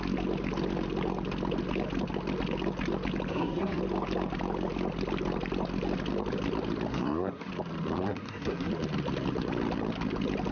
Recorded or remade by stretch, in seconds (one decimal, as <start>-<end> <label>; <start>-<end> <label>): 0.0-3.3 recorded; 3.3-3.8 remade; 3.8-6.9 recorded; 6.9-7.5 remade; 7.5-8.1 recorded; 8.1-8.7 remade; 8.7-10.5 recorded